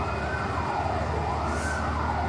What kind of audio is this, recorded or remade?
recorded